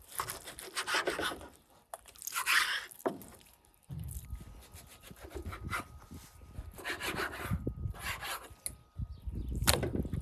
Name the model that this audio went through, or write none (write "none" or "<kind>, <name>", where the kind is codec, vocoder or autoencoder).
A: none